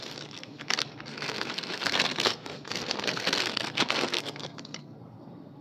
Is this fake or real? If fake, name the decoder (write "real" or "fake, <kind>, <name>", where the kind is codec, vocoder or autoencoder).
fake, codec, SNAC